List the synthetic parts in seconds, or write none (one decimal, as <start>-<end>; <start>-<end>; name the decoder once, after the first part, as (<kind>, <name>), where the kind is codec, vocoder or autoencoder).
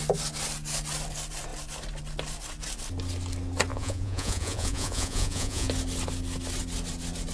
3.7-5.7 (vocoder, Vocos)